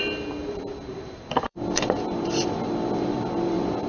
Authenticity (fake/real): fake